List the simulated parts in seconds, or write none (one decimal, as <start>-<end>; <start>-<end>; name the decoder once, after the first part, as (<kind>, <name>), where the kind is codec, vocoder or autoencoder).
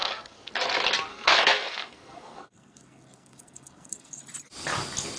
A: 0.0-0.5 (codec, SNAC); 1.1-4.2